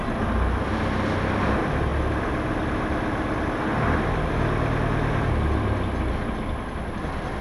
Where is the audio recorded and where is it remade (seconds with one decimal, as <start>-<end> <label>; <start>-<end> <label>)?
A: 0.0-7.4 recorded